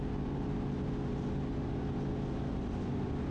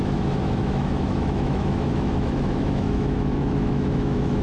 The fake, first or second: second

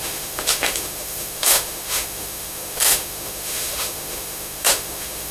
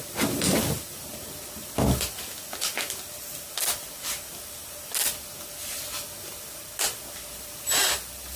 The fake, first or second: first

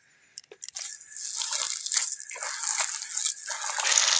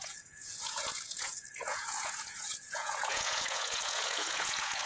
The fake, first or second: second